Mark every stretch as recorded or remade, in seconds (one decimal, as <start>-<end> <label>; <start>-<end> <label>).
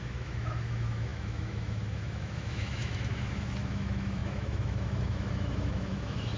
0.0-6.4 remade